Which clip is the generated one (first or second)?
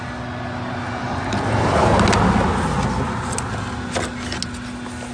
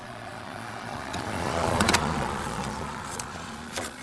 second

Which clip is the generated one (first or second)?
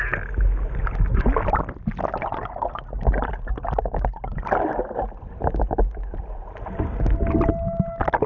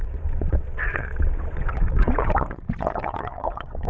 second